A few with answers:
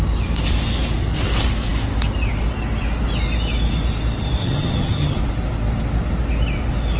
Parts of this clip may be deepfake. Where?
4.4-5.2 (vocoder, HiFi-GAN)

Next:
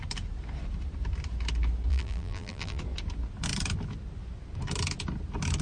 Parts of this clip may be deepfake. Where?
1.9-2.8 (vocoder, BigVGAN v2)

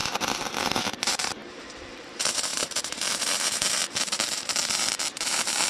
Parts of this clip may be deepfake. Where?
0.6-5.7 (vocoder, BigVGAN v2)

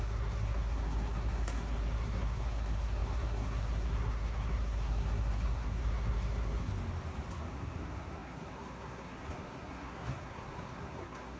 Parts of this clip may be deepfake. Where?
0.0-6.7 (codec, SNAC); 7.3-11.4

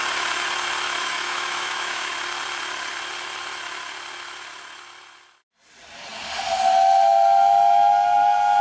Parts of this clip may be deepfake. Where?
1.0-2.1 (autoencoder, DAC-VAE)

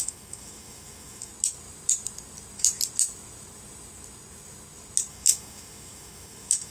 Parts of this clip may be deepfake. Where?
0.0-1.3 (autoencoder, DAC-VAE); 5.1-6.7

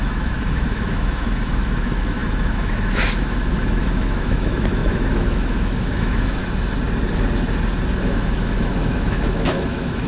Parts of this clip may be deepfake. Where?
0.0-6.4 (autoencoder, DAC-VAE); 8.0-10.1

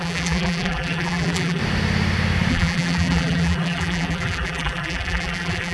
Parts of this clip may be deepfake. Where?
0.0-1.6 (vocoder, BigVGAN v2); 2.5-5.7